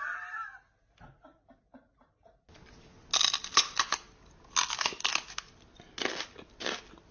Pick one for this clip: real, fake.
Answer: real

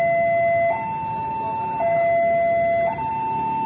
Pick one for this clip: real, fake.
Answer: real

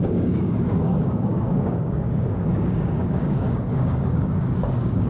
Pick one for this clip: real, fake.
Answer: fake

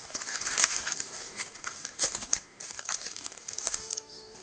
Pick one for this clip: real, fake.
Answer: fake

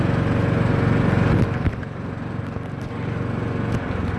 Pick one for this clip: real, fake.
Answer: real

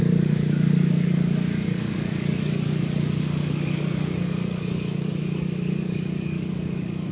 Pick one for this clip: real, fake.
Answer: fake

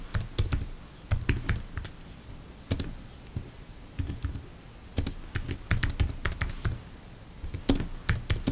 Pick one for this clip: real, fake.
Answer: real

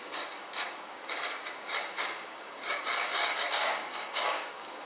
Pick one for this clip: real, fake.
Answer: fake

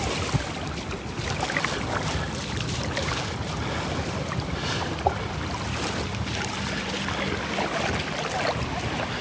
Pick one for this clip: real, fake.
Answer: real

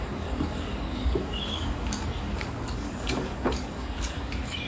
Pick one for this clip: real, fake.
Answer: fake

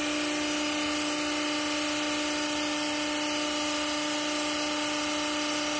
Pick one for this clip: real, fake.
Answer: real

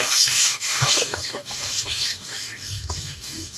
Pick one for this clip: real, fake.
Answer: fake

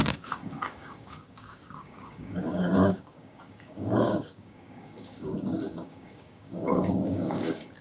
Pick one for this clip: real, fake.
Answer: fake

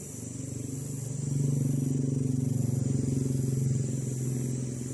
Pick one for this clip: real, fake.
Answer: real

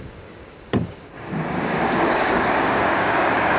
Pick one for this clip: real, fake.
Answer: fake